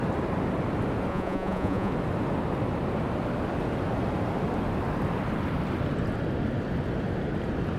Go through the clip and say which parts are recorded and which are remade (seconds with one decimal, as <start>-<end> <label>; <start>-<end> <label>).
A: 0.0-1.1 recorded; 1.1-1.9 remade; 1.9-7.8 recorded